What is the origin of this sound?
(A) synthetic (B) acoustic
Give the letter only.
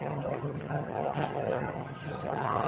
A